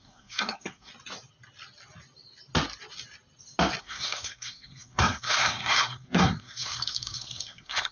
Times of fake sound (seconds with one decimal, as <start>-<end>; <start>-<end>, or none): 0.0-0.9; 3.8-7.9